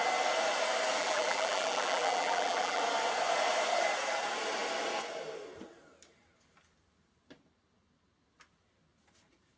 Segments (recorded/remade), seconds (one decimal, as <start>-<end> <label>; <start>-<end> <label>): 0.0-1.0 recorded; 1.0-2.8 remade; 2.8-9.6 recorded